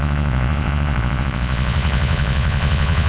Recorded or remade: remade